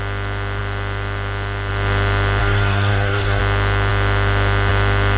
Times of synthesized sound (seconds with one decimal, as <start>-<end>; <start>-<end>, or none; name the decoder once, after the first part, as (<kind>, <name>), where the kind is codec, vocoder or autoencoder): 2.4-3.4 (codec, SNAC)